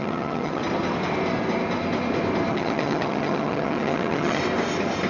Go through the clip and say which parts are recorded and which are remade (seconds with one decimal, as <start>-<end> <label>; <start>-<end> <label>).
0.0-0.6 remade; 0.6-2.5 recorded; 2.5-4.4 remade; 4.4-5.1 recorded